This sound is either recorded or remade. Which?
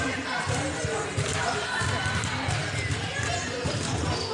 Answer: recorded